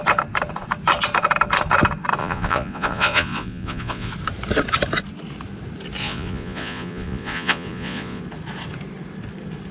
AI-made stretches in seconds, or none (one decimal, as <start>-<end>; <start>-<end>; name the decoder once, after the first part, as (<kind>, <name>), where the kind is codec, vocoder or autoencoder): 2.2-4.1 (vocoder, Vocos); 6.0-8.2